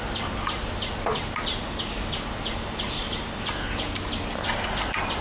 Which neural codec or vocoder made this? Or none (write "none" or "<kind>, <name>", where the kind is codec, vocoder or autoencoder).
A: none